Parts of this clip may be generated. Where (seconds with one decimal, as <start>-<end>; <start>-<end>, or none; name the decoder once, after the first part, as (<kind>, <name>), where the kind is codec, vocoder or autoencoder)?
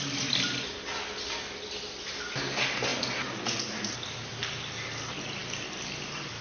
none